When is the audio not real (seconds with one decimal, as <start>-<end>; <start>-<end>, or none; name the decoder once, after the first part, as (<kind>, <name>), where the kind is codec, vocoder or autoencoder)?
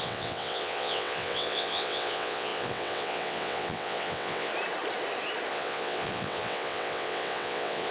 0.0-4.5 (vocoder, WaveNeXt); 5.5-7.9